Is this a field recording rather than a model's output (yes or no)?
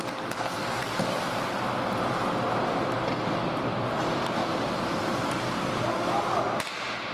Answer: yes